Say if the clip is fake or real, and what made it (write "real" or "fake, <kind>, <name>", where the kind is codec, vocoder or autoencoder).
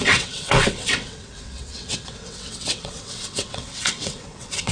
fake, vocoder, WaveNeXt